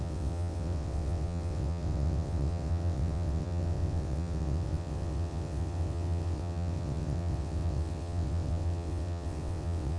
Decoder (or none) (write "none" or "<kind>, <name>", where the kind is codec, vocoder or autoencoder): vocoder, WaveNeXt